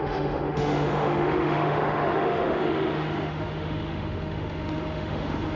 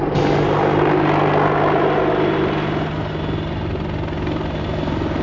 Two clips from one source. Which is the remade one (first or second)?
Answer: first